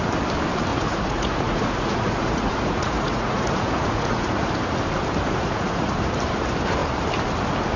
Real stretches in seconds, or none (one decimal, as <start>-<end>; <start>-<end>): 0.0-0.7; 4.5-5.2; 5.9-7.8